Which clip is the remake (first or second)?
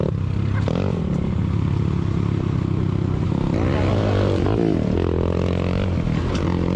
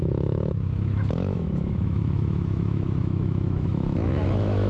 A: second